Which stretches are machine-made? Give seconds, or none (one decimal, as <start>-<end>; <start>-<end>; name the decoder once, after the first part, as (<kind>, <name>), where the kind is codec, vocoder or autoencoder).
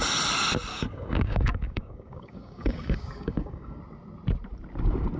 0.7-3.8 (codec, DAC)